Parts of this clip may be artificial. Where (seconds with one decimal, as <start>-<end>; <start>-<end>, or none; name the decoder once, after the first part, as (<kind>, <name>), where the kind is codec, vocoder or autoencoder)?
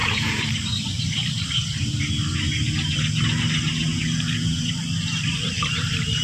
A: 0.0-0.5 (vocoder, Vocos); 3.9-4.7